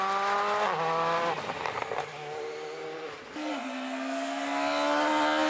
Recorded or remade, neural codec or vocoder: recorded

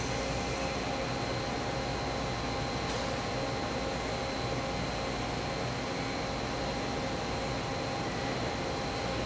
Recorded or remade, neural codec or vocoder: recorded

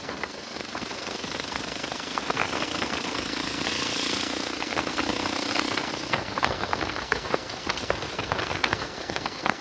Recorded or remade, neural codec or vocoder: remade, codec, SNAC